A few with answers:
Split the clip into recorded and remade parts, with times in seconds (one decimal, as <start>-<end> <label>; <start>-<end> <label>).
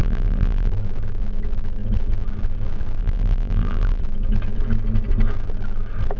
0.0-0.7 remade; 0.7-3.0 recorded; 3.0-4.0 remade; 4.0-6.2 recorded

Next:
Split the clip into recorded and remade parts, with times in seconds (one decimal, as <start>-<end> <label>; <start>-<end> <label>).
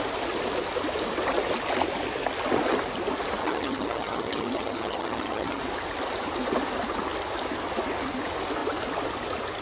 0.0-3.4 recorded; 3.4-5.6 remade; 5.6-9.6 recorded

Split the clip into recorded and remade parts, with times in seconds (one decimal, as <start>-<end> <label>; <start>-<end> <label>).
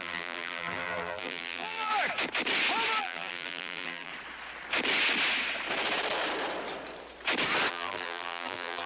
0.0-1.9 remade; 1.9-3.0 recorded; 3.0-4.1 remade; 4.1-7.7 recorded; 7.7-8.9 remade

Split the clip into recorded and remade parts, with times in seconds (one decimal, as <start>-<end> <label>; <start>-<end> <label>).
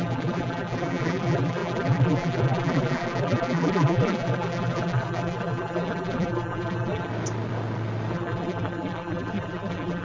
0.0-7.1 remade; 7.1-8.1 recorded; 8.1-10.0 remade